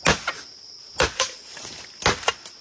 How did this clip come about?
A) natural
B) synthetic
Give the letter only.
A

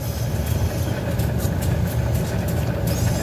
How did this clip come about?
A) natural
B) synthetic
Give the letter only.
A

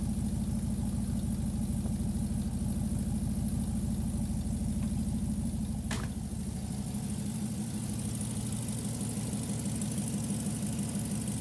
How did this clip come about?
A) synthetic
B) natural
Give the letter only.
B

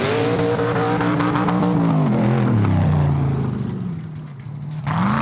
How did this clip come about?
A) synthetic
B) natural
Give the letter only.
B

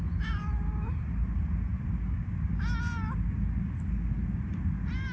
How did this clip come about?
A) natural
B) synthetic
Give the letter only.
A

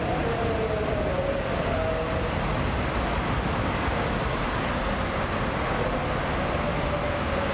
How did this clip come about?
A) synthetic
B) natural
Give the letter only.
B